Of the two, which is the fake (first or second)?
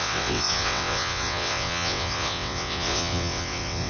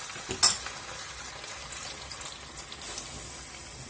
first